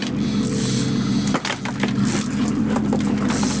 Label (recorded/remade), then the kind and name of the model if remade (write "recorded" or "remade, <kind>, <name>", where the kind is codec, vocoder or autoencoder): recorded